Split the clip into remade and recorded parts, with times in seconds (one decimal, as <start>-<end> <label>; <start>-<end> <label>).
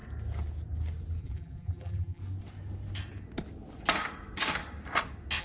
0.0-1.2 recorded; 1.2-2.2 remade; 2.2-5.4 recorded